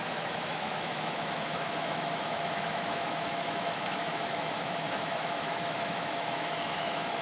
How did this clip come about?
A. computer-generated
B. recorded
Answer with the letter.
A